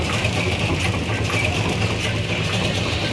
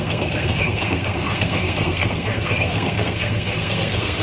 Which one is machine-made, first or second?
second